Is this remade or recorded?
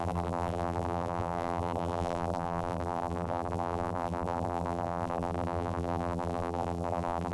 remade